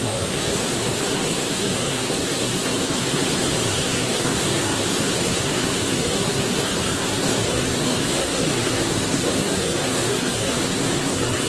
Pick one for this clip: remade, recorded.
remade